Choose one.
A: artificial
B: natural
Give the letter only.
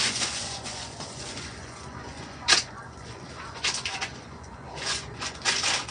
A